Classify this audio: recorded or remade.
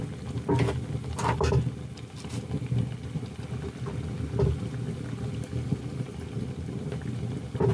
recorded